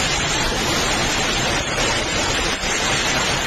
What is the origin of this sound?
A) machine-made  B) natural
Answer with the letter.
B